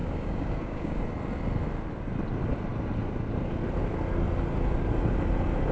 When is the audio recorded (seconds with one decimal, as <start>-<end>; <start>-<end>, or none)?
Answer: 1.0-5.7